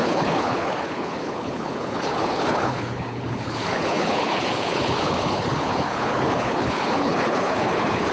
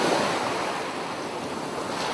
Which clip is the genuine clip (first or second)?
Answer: second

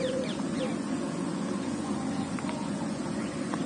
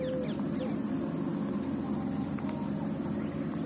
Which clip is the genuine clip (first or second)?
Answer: second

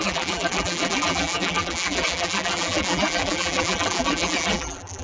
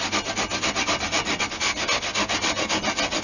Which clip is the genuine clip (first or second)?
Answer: second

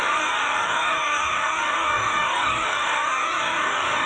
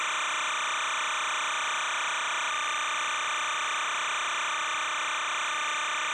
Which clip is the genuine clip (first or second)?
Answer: second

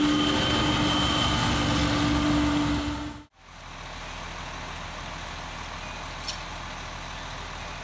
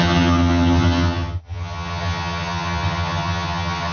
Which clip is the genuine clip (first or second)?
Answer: first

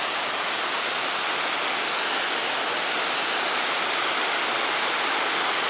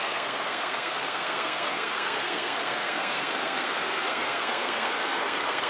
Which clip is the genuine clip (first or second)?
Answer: first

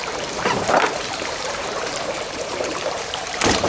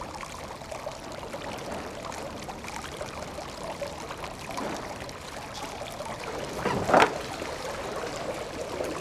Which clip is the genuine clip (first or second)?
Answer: second